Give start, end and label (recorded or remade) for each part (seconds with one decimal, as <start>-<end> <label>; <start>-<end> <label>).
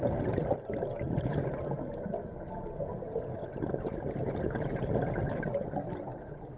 0.0-6.6 recorded